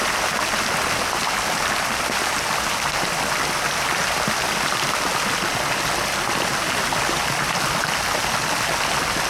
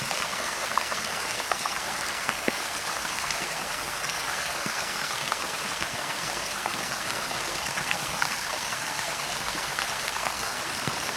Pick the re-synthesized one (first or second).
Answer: second